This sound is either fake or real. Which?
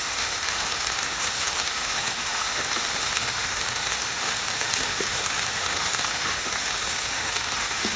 fake